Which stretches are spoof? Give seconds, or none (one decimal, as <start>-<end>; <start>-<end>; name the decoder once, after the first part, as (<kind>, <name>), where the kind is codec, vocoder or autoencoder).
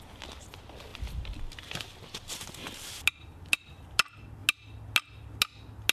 none